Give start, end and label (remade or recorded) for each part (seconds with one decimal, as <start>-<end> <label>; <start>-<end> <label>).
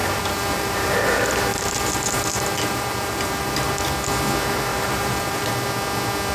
0.0-1.0 remade; 1.0-1.5 recorded; 1.5-3.7 remade; 3.7-4.7 recorded; 4.7-5.5 remade; 5.5-6.3 recorded